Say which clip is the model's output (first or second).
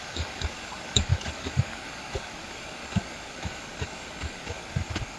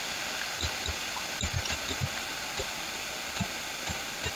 first